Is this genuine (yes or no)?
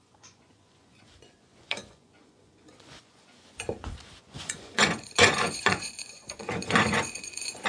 no